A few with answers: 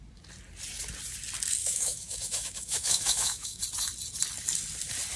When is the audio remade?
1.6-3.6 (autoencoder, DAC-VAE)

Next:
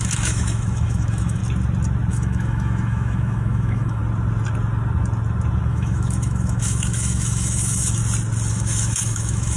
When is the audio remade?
0.0-1.4 (autoencoder, DAC-VAE); 2.1-4.0; 5.7-8.0; 8.5-9.6

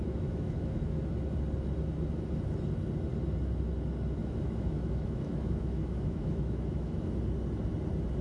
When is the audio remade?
0.0-1.1 (autoencoder, DAC-VAE); 4.2-7.2

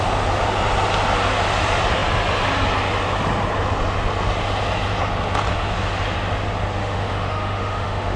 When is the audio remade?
6.8-8.2 (autoencoder, DAC-VAE)

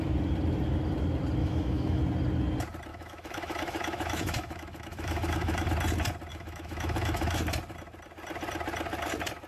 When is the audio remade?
1.4-2.0 (autoencoder, DAC-VAE); 2.9-5.7; 6.3-7.4

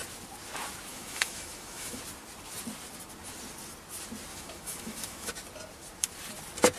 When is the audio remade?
0.9-2.0 (autoencoder, DAC-VAE); 4.3-5.3

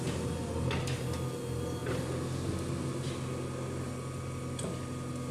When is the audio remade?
none

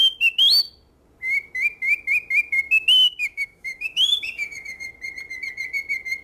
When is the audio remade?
3.2-4.9 (autoencoder, DAC-VAE)